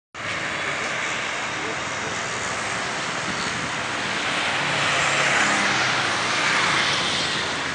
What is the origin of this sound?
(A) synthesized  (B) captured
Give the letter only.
B